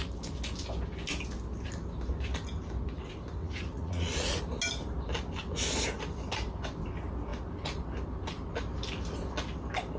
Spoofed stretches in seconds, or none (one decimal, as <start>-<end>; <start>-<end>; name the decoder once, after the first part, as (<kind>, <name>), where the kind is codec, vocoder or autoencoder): 3.4-4.4 (vocoder, Vocos)